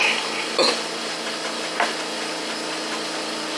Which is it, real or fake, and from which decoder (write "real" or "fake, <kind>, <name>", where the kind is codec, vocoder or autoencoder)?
real